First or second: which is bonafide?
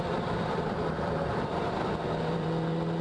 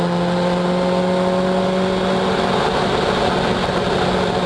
second